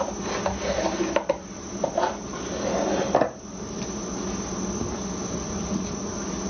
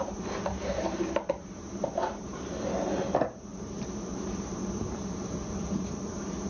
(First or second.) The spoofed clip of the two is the second